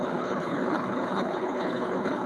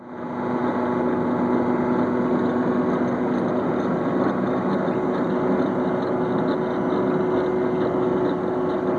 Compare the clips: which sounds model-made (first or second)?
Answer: first